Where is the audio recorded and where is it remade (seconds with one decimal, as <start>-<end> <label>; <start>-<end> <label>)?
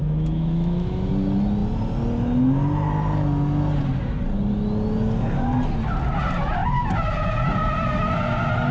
0.0-1.1 remade; 1.1-8.7 recorded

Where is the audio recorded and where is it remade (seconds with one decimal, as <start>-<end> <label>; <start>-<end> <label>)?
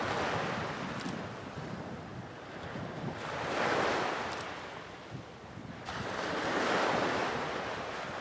0.0-8.2 recorded